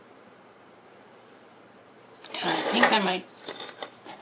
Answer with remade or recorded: remade